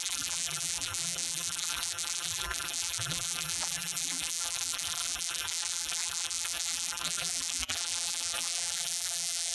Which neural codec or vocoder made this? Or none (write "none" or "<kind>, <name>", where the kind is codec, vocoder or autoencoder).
vocoder, BigVGAN v2